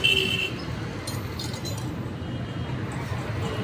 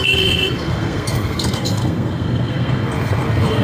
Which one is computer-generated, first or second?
second